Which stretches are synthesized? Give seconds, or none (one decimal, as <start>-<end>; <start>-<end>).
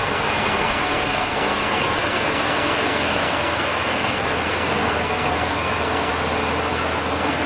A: 0.0-6.1; 6.7-7.5